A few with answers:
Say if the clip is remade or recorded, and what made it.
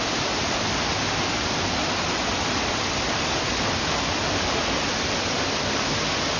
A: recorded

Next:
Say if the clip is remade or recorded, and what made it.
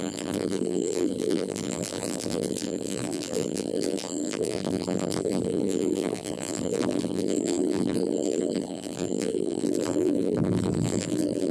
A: remade, vocoder, BigVGAN v2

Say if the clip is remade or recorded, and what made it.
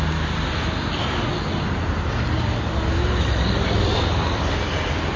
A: recorded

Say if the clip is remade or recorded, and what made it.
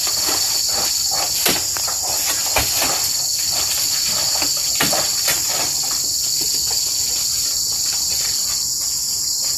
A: recorded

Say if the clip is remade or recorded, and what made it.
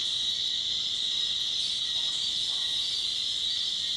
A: recorded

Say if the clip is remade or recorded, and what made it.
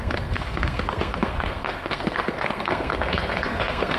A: remade, codec, SNAC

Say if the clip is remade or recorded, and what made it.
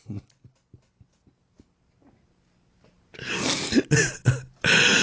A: recorded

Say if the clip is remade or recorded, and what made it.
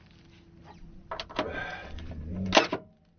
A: recorded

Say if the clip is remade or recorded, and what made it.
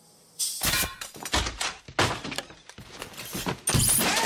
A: recorded